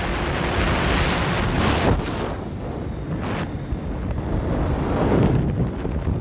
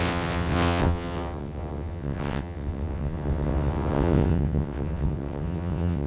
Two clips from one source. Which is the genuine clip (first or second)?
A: first